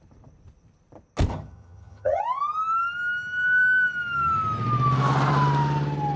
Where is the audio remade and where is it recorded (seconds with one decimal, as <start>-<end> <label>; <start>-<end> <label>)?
0.0-1.3 recorded; 1.3-2.2 remade; 2.2-6.2 recorded